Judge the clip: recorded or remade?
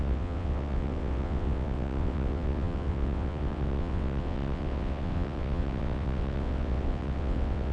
remade